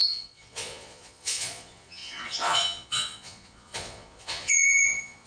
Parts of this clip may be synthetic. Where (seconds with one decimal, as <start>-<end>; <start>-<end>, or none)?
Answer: 0.0-5.3